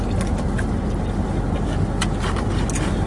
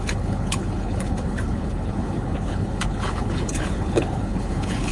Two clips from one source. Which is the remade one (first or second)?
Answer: second